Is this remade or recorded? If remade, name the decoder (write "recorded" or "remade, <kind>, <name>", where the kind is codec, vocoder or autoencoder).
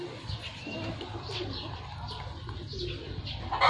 recorded